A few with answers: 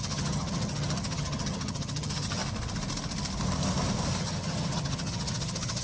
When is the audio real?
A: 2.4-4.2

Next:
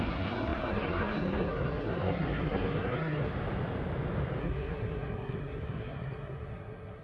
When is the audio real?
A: 3.3-4.4